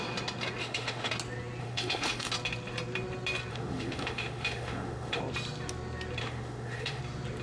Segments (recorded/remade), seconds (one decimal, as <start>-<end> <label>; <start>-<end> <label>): 0.0-0.6 recorded; 0.6-1.1 remade; 1.1-1.6 recorded; 1.6-2.3 remade; 2.3-3.5 recorded; 3.5-5.2 remade; 5.2-6.2 recorded; 6.2-7.0 remade; 7.0-7.4 recorded

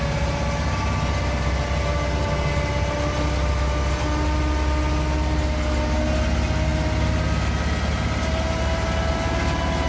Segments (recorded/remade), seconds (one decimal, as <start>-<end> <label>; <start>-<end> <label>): 0.0-9.9 recorded